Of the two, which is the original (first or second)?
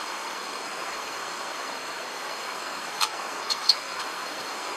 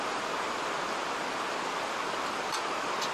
second